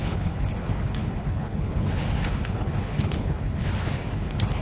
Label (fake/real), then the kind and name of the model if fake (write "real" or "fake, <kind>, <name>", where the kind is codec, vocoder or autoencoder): fake, codec, HILCodec